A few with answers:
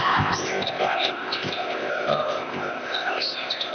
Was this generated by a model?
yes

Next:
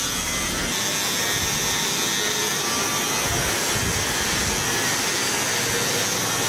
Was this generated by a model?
no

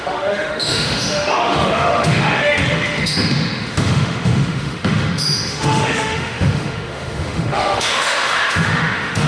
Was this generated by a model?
yes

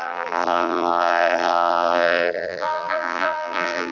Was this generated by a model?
yes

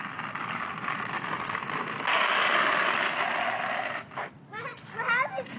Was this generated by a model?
no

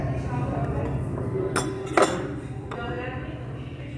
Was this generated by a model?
no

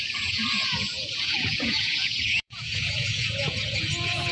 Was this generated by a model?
yes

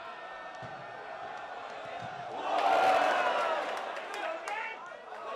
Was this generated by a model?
no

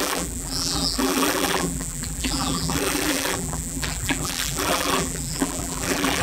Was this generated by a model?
yes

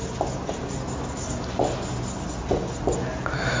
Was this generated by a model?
no